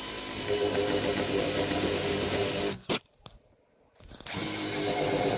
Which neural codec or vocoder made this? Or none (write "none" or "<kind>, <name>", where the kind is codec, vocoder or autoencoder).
none